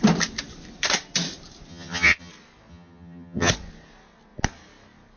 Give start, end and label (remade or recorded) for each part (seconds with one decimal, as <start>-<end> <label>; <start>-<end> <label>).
0.0-1.7 recorded; 1.7-2.3 remade; 2.3-2.7 recorded; 2.7-3.5 remade; 3.5-5.2 recorded